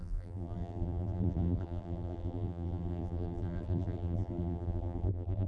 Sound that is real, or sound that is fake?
fake